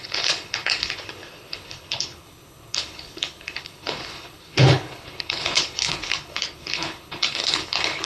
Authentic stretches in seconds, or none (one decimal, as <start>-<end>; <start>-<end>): none

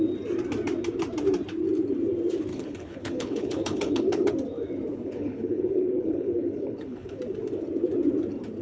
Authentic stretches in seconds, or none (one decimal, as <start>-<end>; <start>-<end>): 0.0-2.5; 4.3-4.9; 7.2-8.6

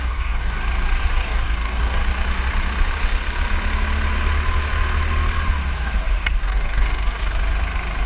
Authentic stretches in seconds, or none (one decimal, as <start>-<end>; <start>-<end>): 0.6-1.1; 2.0-6.4; 7.2-8.1

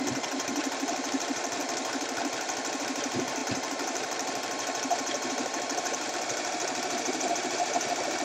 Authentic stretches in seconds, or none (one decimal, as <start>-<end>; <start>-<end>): 1.6-2.8

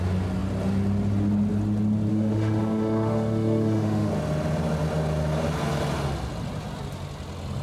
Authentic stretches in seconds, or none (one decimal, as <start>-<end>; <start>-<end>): 0.0-2.1; 4.1-7.6

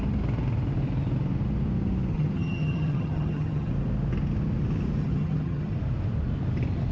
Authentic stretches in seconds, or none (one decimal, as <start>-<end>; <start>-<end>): 0.0-2.1; 3.7-5.0; 5.7-6.9

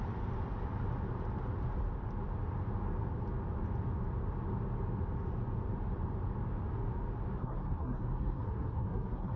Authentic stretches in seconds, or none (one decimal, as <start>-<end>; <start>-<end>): 0.0-7.4